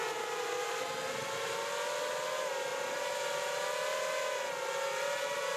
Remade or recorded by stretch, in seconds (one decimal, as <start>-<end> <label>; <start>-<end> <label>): 0.0-5.6 recorded